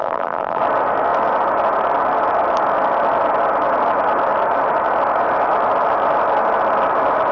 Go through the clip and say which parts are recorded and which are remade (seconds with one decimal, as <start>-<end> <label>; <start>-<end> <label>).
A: 0.0-0.6 remade; 0.6-7.3 recorded